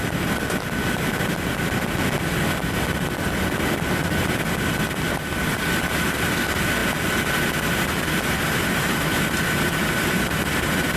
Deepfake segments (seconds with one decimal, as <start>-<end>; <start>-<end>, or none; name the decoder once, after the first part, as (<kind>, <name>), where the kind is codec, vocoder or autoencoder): none